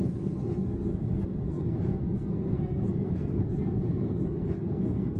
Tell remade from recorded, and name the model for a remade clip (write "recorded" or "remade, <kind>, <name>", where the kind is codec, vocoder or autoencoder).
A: remade, codec, SNAC